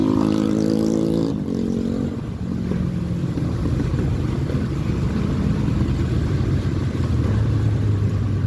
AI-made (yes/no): no